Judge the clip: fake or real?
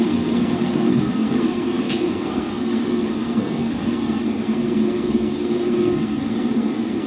fake